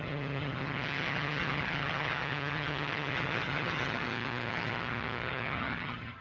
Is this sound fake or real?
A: fake